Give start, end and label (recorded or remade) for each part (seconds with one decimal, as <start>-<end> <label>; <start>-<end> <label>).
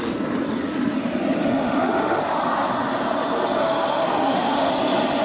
0.0-1.4 recorded; 1.4-2.2 remade; 2.2-3.6 recorded; 3.6-4.7 remade; 4.7-5.2 recorded